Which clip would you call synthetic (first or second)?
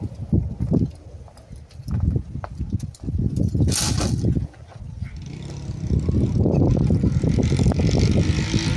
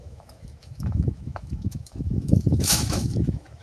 second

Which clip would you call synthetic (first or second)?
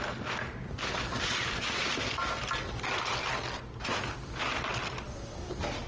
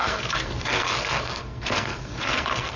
second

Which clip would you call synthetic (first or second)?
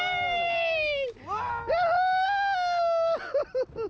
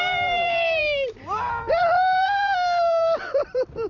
second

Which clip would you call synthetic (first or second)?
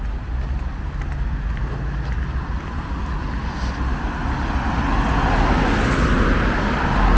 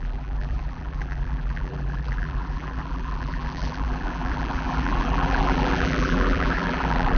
second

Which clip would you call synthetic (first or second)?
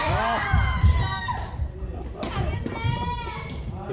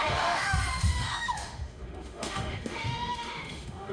second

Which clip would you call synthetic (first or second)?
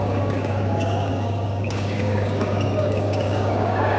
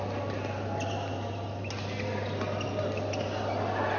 first